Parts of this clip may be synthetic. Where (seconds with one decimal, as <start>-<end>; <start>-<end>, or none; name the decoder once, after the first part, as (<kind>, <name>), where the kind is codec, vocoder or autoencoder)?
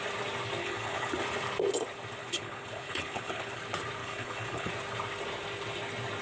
0.6-1.1 (codec, HILCodec); 2.2-3.6; 4.0-4.7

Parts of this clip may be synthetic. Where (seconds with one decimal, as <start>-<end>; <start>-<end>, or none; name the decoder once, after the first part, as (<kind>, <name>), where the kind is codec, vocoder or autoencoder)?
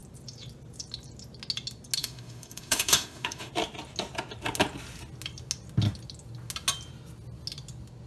2.0-3.5 (autoencoder, DAC-VAE)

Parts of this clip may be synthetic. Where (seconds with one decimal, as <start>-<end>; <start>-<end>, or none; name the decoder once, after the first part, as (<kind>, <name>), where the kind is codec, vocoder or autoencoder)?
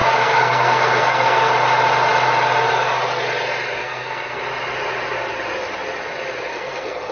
0.0-1.5 (codec, SNAC); 3.8-4.4; 6.5-7.1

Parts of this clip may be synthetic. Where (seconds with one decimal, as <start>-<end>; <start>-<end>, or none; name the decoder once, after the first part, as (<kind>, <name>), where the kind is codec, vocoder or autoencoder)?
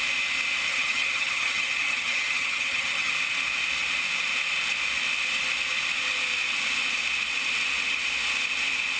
0.7-3.1 (vocoder, HiFi-GAN)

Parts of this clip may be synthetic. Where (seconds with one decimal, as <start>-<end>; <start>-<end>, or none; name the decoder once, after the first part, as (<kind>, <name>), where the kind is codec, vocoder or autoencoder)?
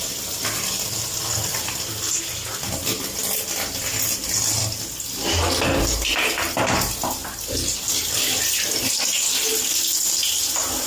none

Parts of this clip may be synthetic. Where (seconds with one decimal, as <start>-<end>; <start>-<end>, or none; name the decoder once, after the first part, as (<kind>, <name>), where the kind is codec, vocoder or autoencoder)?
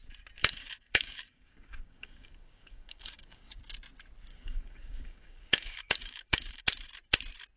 0.4-3.6 (codec, DAC); 4.3-6.6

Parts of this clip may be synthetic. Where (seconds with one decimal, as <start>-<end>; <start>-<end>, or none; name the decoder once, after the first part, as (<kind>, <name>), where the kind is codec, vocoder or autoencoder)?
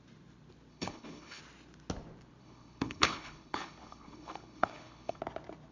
0.7-1.4 (codec, HILCodec); 2.4-5.2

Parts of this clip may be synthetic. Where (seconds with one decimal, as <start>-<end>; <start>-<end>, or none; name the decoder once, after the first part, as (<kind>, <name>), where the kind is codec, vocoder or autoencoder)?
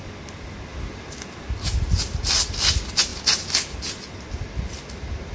none